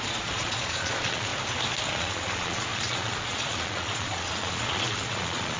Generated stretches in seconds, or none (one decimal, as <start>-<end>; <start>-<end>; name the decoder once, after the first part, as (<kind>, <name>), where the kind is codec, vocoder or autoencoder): 0.0-1.3 (vocoder, Vocos); 1.9-5.6